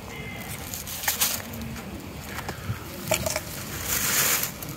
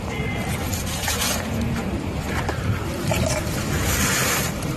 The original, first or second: first